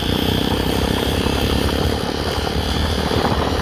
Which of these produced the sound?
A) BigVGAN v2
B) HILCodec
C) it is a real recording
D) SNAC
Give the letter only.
A